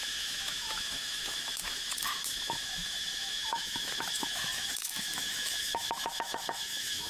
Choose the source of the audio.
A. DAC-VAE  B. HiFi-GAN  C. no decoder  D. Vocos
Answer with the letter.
A